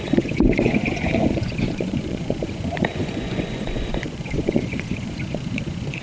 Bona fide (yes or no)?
no